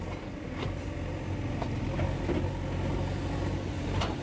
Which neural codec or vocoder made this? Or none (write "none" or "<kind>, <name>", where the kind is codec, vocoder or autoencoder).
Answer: none